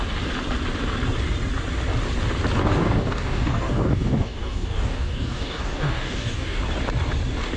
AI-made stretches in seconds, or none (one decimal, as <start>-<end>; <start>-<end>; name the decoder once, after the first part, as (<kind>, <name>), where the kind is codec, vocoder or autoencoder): 2.6-6.6 (codec, DAC)